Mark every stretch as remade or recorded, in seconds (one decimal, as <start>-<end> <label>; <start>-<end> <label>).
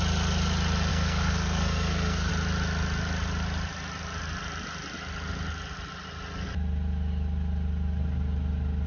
0.0-0.9 recorded; 0.9-2.3 remade; 2.3-8.9 recorded